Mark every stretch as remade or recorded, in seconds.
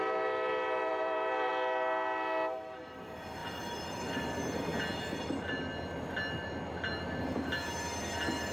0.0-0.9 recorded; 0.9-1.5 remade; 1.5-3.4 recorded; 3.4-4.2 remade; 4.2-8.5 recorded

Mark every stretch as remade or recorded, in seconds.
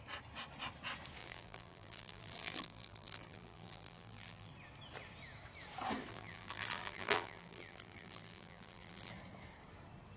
0.0-1.2 recorded; 1.2-4.5 remade; 4.5-6.1 recorded; 6.1-9.1 remade; 9.1-10.2 recorded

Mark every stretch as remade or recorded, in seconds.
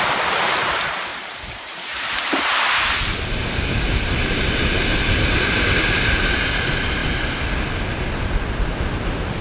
0.0-1.1 recorded; 1.1-5.6 remade; 5.6-9.4 recorded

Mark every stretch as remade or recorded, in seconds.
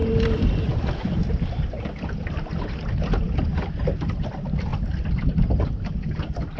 0.0-2.8 remade; 2.8-4.7 recorded; 4.7-5.7 remade; 5.7-6.6 recorded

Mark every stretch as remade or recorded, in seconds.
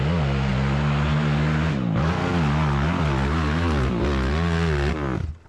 0.0-5.5 recorded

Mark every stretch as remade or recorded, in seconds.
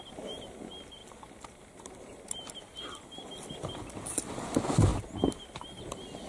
0.0-6.3 recorded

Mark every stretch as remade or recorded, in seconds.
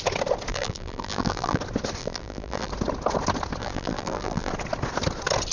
0.0-0.5 recorded; 0.5-1.6 remade; 1.6-2.0 recorded; 2.0-2.7 remade; 2.7-3.6 recorded; 3.6-4.5 remade; 4.5-5.5 recorded